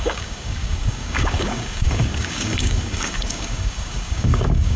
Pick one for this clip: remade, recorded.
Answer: remade